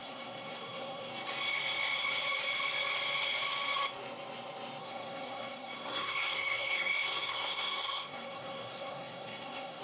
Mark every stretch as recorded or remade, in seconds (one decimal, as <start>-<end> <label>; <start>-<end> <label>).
0.0-1.1 remade; 1.1-4.8 recorded; 4.8-9.8 remade